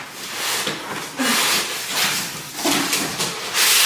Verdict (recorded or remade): recorded